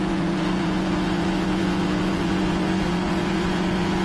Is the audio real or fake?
fake